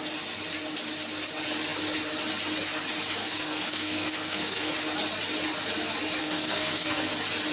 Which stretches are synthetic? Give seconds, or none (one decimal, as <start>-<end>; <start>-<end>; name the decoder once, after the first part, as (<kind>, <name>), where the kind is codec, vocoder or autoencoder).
3.2-4.7 (codec, SNAC); 6.2-7.1

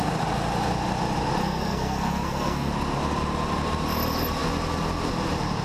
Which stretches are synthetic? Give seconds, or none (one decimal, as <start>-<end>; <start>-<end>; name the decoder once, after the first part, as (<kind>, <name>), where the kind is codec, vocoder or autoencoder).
1.4-2.7 (codec, SNAC)

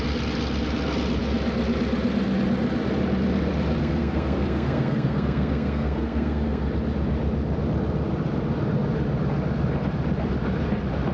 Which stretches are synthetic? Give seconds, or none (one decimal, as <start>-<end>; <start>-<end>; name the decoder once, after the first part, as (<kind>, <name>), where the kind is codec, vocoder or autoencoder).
3.8-6.7 (codec, SNAC)